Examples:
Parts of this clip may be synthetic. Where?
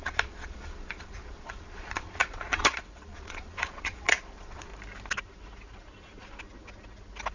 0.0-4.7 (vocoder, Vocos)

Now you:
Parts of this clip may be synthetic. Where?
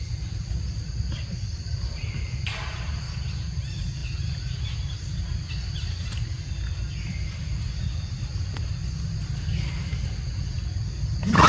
none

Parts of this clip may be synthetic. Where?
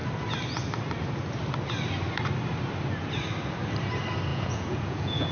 4.3-5.3 (vocoder, Vocos)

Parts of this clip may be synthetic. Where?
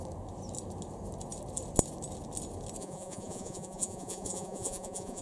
2.8-5.2 (vocoder, Vocos)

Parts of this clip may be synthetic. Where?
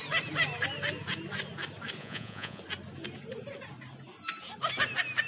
2.0-2.6 (vocoder, Vocos)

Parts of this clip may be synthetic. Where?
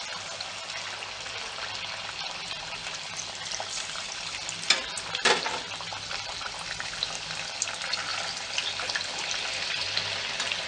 none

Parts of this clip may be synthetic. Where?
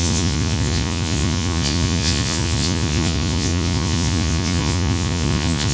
0.0-5.7 (vocoder, Vocos)